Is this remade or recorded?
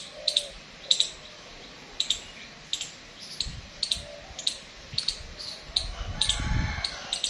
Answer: recorded